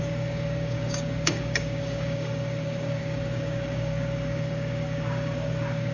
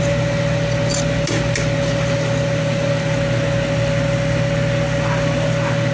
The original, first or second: second